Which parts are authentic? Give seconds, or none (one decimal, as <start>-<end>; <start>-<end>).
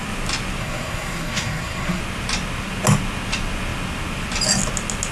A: 0.0-0.6; 2.0-5.1